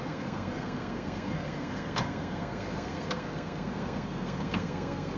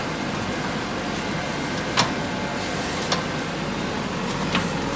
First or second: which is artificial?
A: first